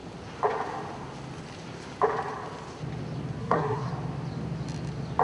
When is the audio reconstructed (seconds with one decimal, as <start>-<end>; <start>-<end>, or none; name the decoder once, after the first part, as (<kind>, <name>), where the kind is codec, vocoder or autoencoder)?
3.4-3.9 (codec, SNAC)

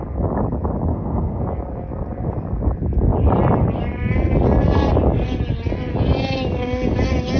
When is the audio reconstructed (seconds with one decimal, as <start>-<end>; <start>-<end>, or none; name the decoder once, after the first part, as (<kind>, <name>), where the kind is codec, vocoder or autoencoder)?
0.9-1.4 (codec, SNAC)

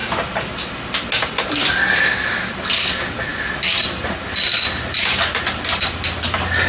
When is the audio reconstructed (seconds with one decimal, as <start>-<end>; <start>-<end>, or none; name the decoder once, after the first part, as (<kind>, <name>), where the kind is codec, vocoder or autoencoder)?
none

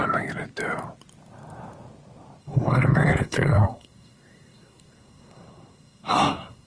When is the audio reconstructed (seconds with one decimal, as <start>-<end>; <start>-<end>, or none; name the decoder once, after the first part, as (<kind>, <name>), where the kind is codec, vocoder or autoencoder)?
2.4-6.7 (codec, SNAC)

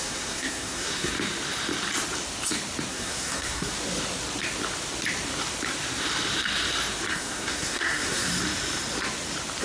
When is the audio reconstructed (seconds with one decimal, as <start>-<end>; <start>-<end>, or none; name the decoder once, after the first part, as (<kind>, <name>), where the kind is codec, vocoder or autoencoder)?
0.0-1.1 (codec, SNAC); 2.9-3.7; 7.1-8.3

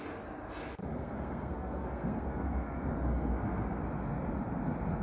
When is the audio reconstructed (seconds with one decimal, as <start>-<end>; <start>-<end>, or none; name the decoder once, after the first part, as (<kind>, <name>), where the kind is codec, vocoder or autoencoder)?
0.8-3.8 (codec, SNAC)